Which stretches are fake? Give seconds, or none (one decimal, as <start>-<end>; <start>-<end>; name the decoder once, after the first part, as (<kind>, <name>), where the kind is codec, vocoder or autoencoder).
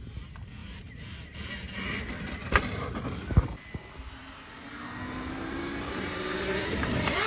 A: 0.6-2.9 (vocoder, BigVGAN v2)